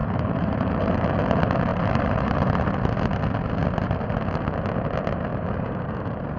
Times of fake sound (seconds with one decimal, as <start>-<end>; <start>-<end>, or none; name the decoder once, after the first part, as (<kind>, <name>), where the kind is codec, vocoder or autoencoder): 0.0-0.9 (vocoder, BigVGAN v2); 1.7-2.7; 5.3-6.4